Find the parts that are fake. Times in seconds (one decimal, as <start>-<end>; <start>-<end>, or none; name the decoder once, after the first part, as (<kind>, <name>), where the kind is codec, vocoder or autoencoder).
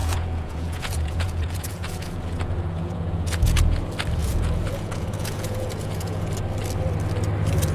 0.0-3.8 (vocoder, Vocos); 4.2-6.3